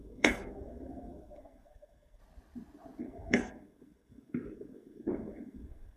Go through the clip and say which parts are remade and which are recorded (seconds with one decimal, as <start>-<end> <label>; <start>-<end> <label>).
0.0-2.2 remade; 2.2-3.0 recorded; 3.0-6.0 remade

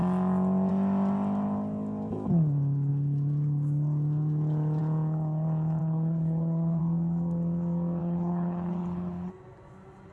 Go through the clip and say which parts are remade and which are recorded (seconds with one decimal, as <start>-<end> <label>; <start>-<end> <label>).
0.0-5.8 recorded; 5.8-6.8 remade; 6.8-8.0 recorded; 8.0-9.3 remade; 9.3-10.1 recorded

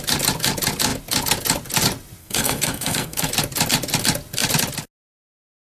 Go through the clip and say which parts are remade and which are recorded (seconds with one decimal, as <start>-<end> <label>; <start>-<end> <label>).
0.0-2.2 recorded; 2.2-3.3 remade; 3.3-5.6 recorded

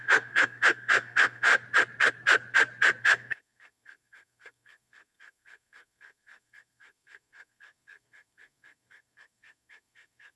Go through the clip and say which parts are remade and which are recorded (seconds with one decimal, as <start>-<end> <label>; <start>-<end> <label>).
0.0-1.5 remade; 1.5-3.0 recorded; 3.0-10.4 remade

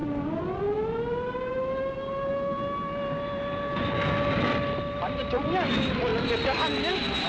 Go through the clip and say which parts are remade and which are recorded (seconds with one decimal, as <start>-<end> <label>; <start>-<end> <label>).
0.0-7.3 recorded

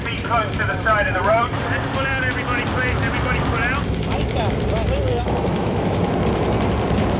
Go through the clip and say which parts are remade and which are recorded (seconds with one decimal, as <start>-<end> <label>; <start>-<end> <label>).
0.0-5.1 recorded; 5.1-6.0 remade; 6.0-7.2 recorded

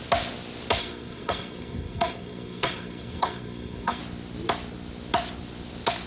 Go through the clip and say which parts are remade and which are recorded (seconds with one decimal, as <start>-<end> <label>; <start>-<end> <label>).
0.0-0.8 recorded; 0.8-4.0 remade; 4.0-6.1 recorded